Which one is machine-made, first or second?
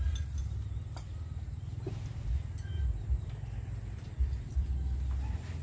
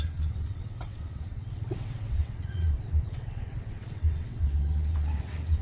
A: second